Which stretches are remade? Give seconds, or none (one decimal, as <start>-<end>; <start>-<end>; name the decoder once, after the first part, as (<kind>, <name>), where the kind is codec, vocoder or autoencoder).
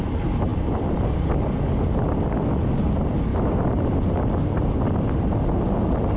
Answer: 0.5-1.7 (vocoder, BigVGAN v2); 3.3-3.8